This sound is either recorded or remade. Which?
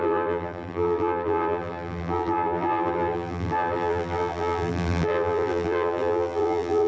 remade